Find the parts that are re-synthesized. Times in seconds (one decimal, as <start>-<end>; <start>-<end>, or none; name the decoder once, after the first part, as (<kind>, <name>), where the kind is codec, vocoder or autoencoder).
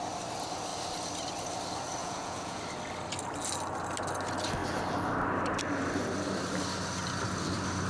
2.0-2.6 (vocoder, Vocos)